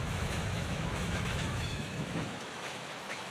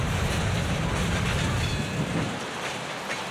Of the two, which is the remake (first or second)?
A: first